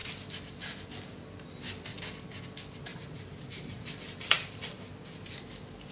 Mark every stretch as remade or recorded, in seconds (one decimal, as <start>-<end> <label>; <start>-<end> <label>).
0.0-2.9 recorded; 2.9-4.9 remade; 4.9-5.9 recorded